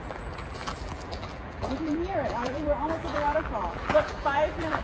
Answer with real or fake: fake